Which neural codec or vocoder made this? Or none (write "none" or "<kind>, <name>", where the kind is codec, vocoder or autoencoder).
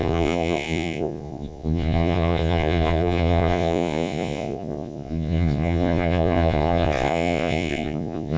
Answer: vocoder, Vocos